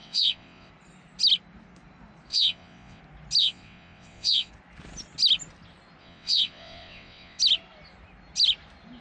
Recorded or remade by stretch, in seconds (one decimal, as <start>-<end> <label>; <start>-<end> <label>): 0.0-0.7 remade; 0.7-2.3 recorded; 2.3-3.0 remade; 3.0-3.4 recorded; 3.4-4.5 remade; 4.5-6.0 recorded; 6.0-7.4 remade; 7.4-9.0 recorded